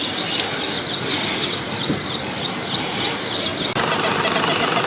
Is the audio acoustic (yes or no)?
yes